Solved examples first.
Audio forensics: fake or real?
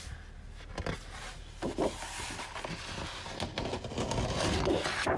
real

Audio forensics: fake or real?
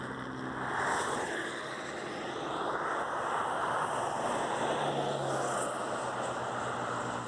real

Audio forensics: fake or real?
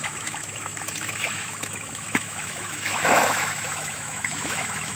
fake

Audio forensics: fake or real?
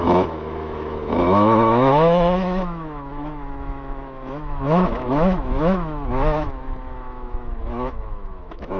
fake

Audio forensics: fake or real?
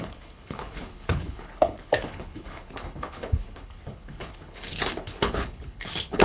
fake